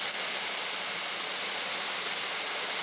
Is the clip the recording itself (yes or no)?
yes